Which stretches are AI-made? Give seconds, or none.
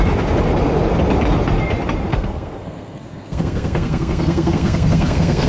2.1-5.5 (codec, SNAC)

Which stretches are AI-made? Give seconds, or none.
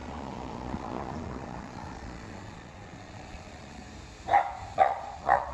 0.0-3.8 (vocoder, Vocos); 4.6-5.5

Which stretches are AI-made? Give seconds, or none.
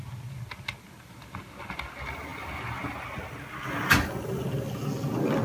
none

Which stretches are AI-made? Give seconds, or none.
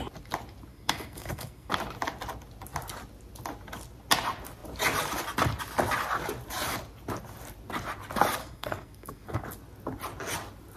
0.7-1.7 (codec, SNAC); 8.4-9.4